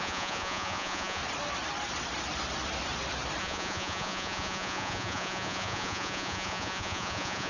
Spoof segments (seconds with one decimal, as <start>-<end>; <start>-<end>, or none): 0.0-1.2; 3.4-7.5